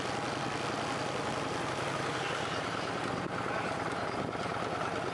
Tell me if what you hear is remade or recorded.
recorded